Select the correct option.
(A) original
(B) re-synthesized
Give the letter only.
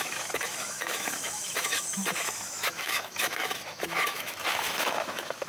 B